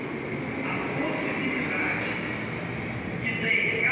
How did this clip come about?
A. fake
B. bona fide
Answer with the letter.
B